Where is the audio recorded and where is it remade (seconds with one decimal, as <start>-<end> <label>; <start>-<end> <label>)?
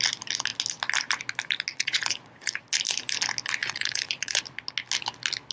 0.0-1.7 recorded; 1.7-2.6 remade; 2.6-3.6 recorded; 3.6-4.4 remade; 4.4-5.5 recorded